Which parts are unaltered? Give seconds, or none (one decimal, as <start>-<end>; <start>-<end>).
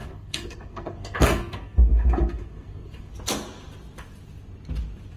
3.1-5.2